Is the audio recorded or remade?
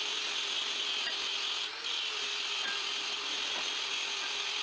recorded